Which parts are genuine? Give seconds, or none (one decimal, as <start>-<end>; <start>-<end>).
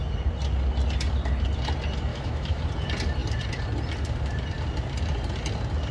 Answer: 0.0-2.1; 2.6-5.9